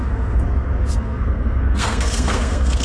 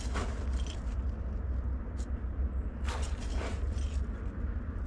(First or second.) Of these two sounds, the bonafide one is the second